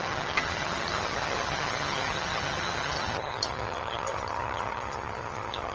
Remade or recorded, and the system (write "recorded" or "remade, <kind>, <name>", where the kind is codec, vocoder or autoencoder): remade, vocoder, HiFi-GAN